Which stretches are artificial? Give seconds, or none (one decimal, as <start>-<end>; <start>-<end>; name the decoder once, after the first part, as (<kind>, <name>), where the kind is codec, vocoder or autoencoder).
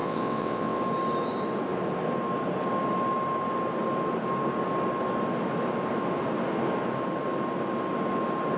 0.0-0.8 (vocoder, WaveNeXt)